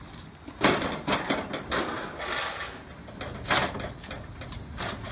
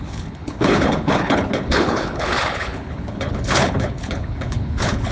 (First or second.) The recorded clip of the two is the first